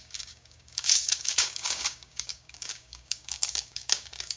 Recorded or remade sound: remade